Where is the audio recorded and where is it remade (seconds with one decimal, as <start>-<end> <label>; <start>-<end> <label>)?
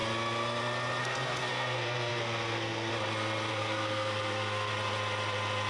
0.0-1.0 recorded; 1.0-2.9 remade; 2.9-3.5 recorded; 3.5-4.7 remade; 4.7-5.7 recorded